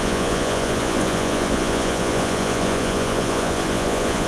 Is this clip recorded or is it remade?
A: remade